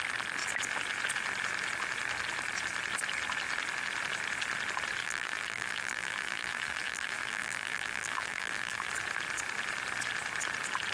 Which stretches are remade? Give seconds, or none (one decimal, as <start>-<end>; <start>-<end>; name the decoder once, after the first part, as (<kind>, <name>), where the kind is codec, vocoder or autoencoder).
5.0-8.9 (vocoder, BigVGAN v2)